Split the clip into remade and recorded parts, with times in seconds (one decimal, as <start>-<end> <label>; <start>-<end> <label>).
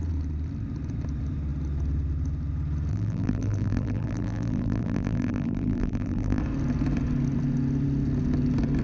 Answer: 0.0-2.9 recorded; 2.9-6.4 remade; 6.4-8.8 recorded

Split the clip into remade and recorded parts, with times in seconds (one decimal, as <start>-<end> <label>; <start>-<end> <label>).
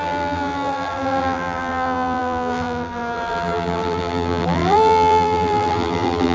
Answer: 0.0-6.3 remade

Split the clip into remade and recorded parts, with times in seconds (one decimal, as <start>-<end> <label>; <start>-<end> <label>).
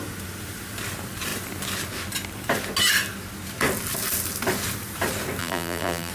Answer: 0.0-5.4 recorded; 5.4-6.1 remade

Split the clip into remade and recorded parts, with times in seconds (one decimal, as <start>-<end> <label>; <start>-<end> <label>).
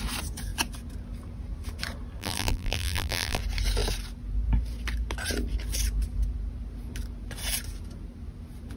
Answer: 0.0-2.2 recorded; 2.2-3.4 remade; 3.4-8.8 recorded